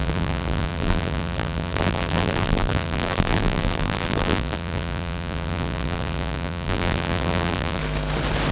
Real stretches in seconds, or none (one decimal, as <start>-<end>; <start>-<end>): 7.8-8.5